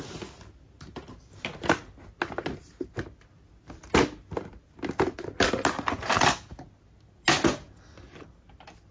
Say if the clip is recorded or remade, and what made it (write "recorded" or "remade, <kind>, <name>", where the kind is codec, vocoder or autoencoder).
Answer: recorded